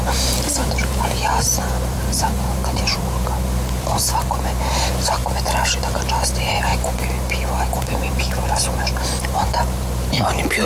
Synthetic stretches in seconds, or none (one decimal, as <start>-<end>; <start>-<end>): 0.0-10.7